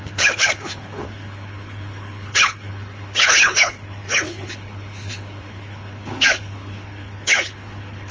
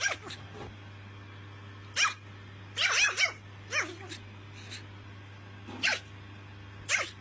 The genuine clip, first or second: second